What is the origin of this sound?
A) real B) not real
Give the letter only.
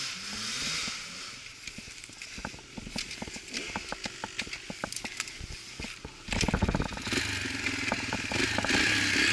A